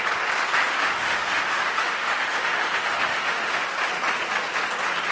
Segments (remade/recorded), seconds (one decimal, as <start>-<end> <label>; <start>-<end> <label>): 0.0-0.7 recorded; 0.7-3.6 remade; 3.6-5.1 recorded